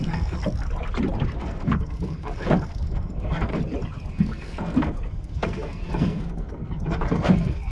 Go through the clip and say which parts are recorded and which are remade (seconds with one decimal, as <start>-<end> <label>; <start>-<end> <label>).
0.0-0.4 remade; 0.4-1.4 recorded; 1.4-3.5 remade; 3.5-4.1 recorded; 4.1-7.7 remade